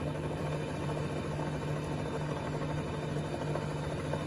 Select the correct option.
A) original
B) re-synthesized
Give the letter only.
A